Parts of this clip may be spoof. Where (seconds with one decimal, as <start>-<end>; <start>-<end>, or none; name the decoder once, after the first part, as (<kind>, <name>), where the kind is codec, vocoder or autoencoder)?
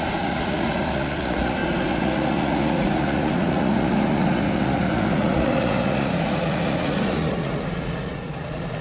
0.0-8.8 (vocoder, Vocos)